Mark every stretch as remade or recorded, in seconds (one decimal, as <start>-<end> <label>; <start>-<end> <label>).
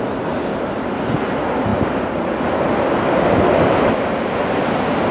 0.0-0.5 recorded; 0.5-1.0 remade; 1.0-5.1 recorded